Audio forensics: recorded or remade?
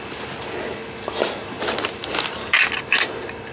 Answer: recorded